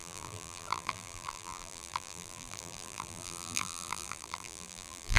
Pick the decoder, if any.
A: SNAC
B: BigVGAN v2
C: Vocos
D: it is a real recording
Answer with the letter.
B